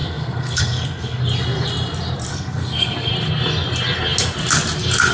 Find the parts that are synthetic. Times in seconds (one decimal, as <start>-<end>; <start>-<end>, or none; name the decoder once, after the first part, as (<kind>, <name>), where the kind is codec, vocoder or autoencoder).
0.0-1.2 (codec, SNAC); 2.3-3.1